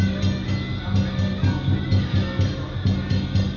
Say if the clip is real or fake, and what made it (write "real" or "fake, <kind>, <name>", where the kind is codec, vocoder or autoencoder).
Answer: real